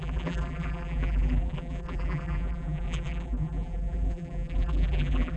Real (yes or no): no